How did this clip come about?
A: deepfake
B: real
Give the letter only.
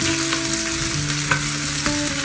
B